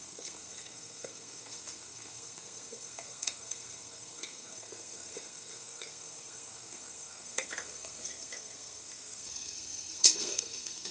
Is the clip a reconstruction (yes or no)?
yes